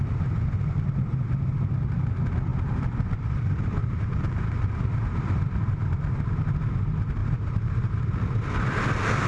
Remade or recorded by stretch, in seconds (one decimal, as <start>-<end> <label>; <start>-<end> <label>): 0.0-2.5 recorded; 2.5-3.4 remade; 3.4-3.8 recorded; 3.8-6.6 remade; 6.6-7.2 recorded; 7.2-8.0 remade; 8.0-9.3 recorded